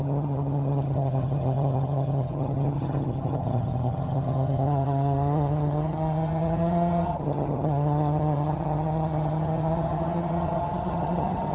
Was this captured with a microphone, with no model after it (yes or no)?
no